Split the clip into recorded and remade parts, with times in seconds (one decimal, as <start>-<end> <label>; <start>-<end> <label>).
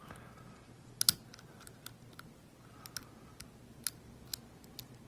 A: 0.0-5.1 recorded